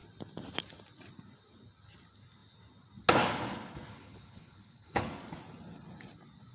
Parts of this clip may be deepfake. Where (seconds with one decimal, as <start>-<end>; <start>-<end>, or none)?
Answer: 3.9-5.2